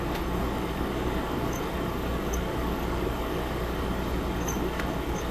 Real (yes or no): no